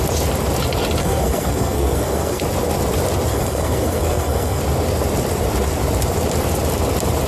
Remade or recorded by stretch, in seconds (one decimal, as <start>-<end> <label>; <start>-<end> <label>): 0.0-1.0 recorded; 1.0-2.4 remade; 2.4-3.3 recorded; 3.3-4.6 remade; 4.6-7.3 recorded